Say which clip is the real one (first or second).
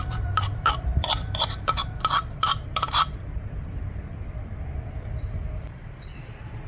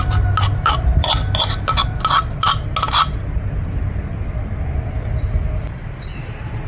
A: second